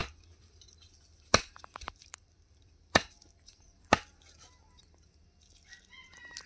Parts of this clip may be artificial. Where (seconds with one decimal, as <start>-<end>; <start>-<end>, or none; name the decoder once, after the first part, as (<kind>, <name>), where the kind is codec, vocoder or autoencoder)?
0.0-3.9 (vocoder, BigVGAN v2)